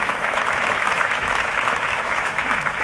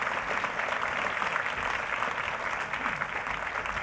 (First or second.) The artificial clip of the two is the first